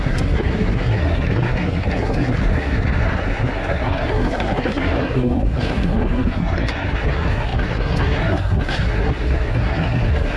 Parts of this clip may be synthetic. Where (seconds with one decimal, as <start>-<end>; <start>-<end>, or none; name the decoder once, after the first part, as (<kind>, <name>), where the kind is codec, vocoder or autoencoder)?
0.0-10.4 (codec, SNAC)